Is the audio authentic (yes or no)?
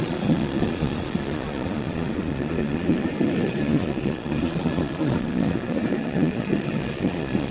no